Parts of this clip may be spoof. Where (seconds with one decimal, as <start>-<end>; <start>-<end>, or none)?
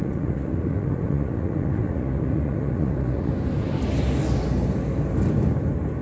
0.0-3.3